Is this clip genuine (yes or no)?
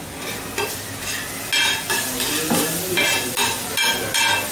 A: yes